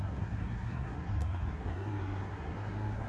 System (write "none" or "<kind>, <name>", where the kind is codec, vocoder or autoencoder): codec, SNAC